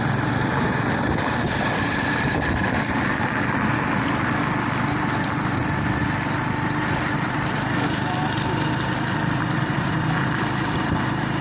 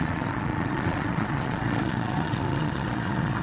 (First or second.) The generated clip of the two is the second